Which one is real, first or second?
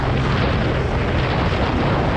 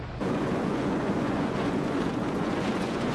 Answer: first